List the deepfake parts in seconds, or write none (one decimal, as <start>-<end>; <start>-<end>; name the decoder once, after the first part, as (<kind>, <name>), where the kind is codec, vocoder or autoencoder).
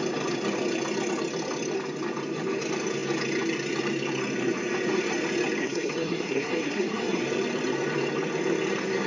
5.6-7.2 (codec, SNAC)